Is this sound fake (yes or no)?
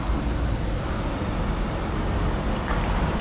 yes